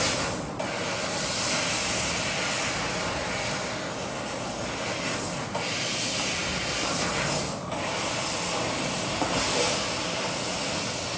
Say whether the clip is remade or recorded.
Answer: recorded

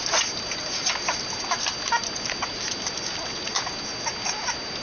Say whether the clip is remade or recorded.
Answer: recorded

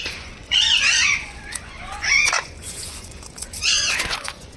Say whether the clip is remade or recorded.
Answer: remade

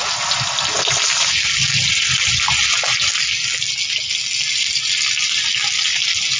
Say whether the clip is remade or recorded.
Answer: recorded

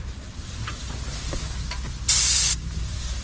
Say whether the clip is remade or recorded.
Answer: recorded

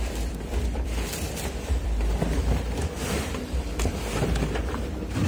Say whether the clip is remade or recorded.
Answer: remade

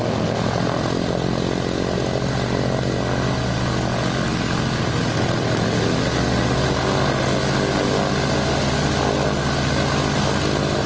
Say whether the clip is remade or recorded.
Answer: recorded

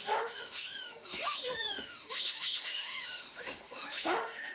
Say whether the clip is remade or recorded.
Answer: remade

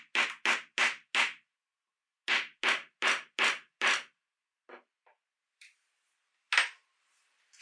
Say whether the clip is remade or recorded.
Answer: recorded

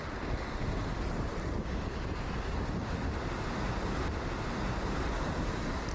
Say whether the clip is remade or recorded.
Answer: recorded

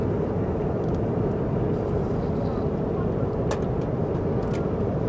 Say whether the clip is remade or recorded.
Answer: recorded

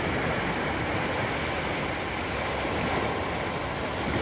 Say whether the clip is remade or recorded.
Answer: recorded